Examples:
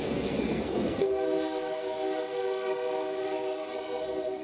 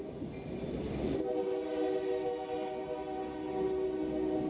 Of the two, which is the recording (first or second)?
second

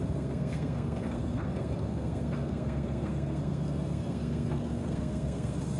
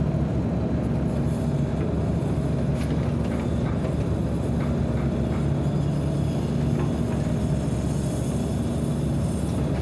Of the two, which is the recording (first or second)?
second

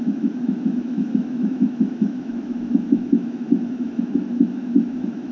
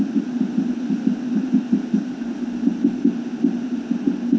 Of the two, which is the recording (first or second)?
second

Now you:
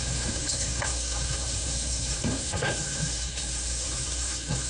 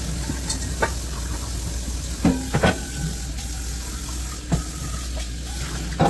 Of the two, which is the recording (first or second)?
second